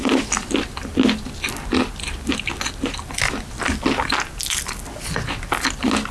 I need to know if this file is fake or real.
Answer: real